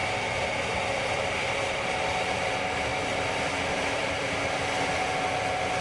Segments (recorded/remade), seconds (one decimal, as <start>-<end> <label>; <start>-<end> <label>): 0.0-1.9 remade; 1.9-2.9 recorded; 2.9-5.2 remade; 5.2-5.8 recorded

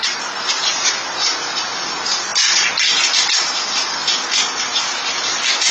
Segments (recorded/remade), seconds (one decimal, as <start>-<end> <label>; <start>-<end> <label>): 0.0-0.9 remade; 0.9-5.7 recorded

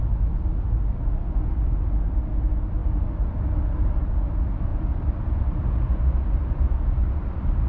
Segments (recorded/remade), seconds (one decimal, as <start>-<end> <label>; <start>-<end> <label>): 0.0-4.7 recorded; 4.7-7.7 remade

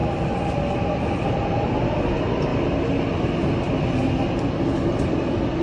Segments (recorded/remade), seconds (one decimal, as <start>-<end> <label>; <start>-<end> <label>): 0.0-5.6 recorded

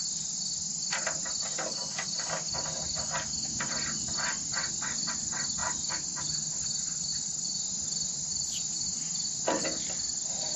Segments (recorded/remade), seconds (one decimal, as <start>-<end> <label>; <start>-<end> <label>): 0.0-5.6 recorded; 5.6-6.2 remade; 6.2-10.6 recorded